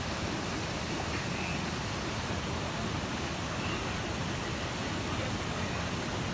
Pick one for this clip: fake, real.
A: real